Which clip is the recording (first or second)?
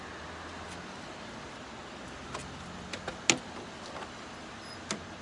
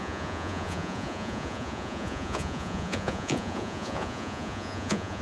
first